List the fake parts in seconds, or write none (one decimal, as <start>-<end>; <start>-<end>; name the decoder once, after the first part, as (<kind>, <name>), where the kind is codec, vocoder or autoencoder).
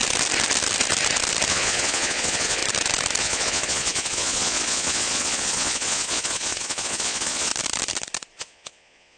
1.5-2.6 (vocoder, Vocos); 3.2-7.5; 8.4-9.2